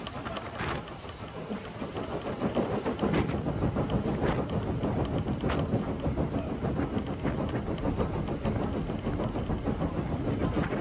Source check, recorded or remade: recorded